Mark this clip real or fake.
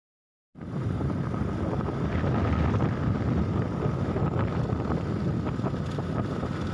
real